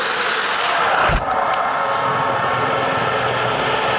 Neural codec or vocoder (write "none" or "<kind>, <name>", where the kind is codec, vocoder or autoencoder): none